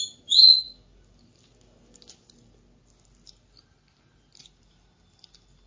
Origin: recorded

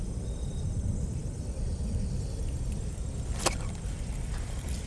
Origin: recorded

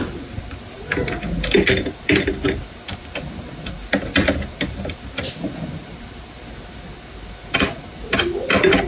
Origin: recorded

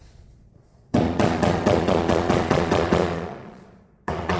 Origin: remade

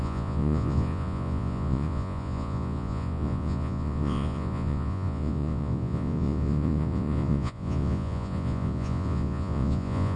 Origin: remade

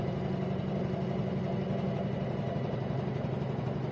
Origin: recorded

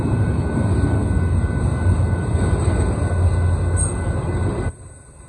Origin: recorded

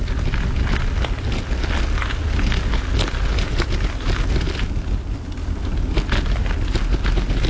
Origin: recorded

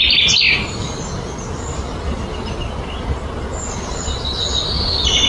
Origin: recorded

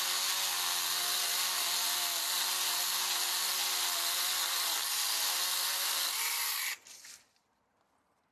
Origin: recorded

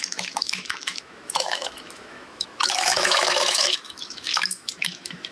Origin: remade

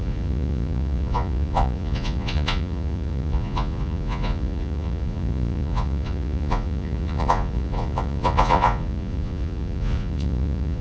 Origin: remade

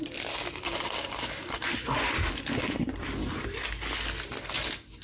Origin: recorded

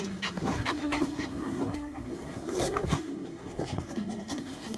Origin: remade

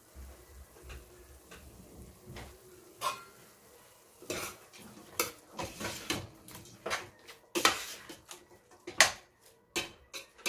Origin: recorded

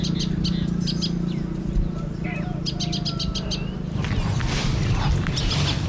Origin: recorded